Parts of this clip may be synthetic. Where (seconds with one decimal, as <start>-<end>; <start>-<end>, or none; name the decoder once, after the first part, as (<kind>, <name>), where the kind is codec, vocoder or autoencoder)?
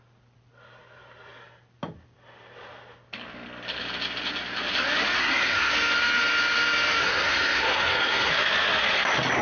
5.2-5.7 (codec, SNAC); 7.0-8.3